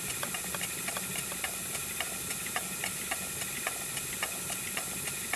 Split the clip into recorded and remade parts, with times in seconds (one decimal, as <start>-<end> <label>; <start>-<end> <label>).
0.0-1.1 recorded; 1.1-4.3 remade; 4.3-5.4 recorded